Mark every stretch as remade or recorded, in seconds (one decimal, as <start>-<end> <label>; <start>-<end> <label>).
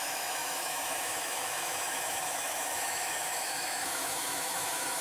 0.0-5.0 remade